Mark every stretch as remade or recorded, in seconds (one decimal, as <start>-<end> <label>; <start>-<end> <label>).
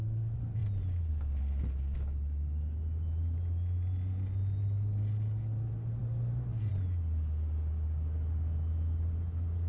0.0-9.7 recorded